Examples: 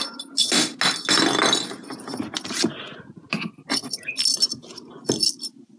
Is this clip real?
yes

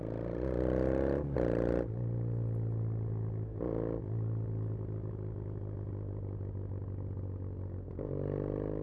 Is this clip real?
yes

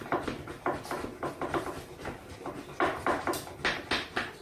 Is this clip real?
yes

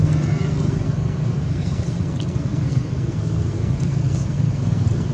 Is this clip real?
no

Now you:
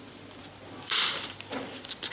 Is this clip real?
yes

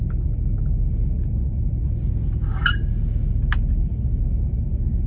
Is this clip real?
yes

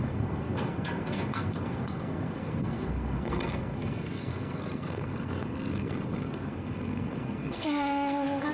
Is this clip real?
no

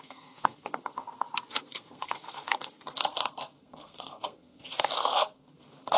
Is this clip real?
no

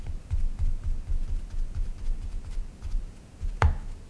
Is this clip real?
yes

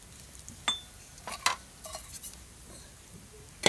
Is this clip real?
yes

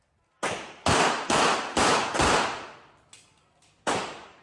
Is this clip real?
yes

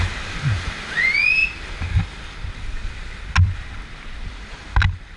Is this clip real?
yes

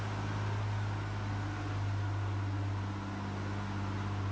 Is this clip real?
yes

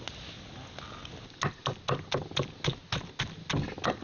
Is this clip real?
yes